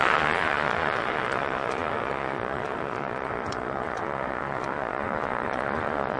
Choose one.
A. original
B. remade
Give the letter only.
B